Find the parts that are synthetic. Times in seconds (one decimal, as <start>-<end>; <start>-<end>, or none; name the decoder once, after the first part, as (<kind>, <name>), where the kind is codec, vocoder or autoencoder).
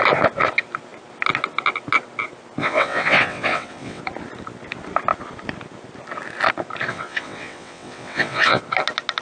2.6-4.0 (vocoder, WaveNeXt); 6.9-8.6